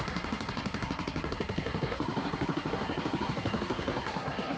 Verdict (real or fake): fake